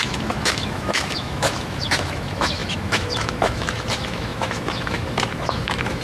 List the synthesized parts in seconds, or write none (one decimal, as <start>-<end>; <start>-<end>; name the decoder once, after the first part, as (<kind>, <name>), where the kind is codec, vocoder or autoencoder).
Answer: 0.0-6.0 (autoencoder, DAC-VAE)